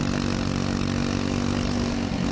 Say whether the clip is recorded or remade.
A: recorded